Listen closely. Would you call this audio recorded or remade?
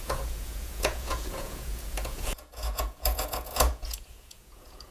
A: remade